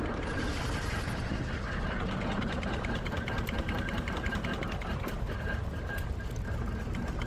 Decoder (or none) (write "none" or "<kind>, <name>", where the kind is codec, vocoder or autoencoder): vocoder, BigVGAN v2